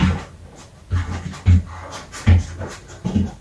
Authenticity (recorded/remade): recorded